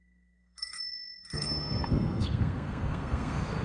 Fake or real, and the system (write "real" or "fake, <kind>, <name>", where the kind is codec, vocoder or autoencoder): fake, codec, SNAC